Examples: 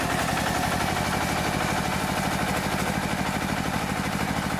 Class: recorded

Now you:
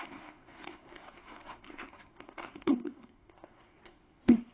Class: remade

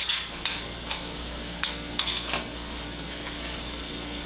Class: remade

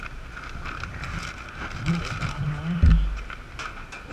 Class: recorded